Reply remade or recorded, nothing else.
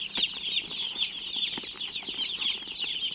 recorded